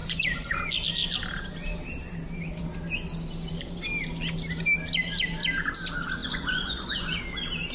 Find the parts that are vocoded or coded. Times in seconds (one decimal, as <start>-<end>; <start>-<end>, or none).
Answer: 0.0-0.6; 6.2-7.2